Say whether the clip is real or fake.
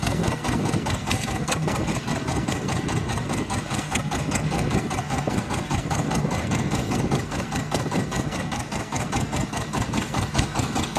fake